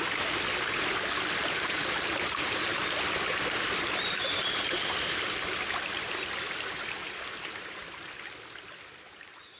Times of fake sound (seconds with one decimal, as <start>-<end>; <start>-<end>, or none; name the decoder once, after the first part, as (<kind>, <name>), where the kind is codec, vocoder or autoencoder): 2.8-7.8 (vocoder, BigVGAN v2)